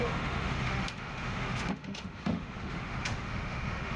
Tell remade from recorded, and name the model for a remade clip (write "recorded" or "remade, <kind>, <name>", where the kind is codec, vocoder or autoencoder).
remade, autoencoder, DAC-VAE